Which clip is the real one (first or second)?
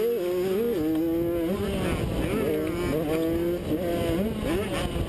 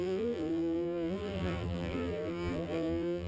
first